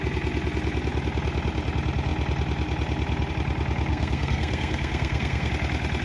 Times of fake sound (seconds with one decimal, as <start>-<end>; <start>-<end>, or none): 3.9-5.5